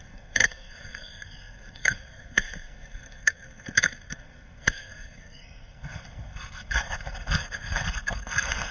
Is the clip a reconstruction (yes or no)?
yes